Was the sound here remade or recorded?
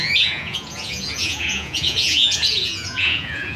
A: remade